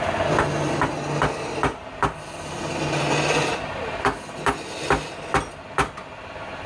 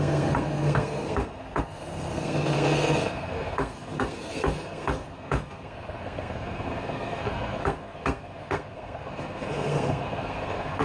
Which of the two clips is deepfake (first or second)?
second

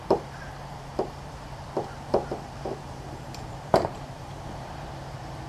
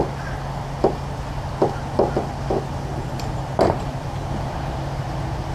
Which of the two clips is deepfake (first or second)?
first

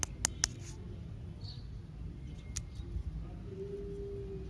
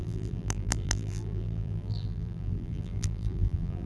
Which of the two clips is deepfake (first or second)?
second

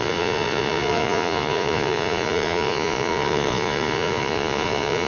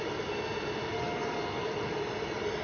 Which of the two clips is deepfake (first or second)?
first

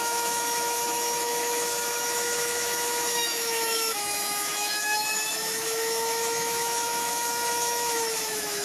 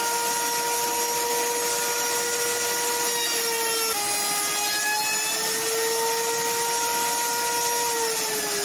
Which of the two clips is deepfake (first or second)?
first